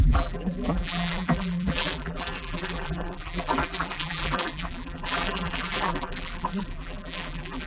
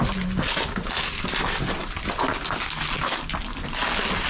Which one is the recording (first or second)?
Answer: second